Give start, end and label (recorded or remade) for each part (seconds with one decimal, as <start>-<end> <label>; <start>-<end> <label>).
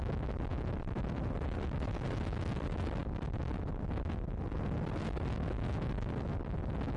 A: 0.0-7.0 remade